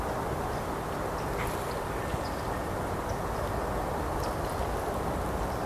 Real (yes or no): yes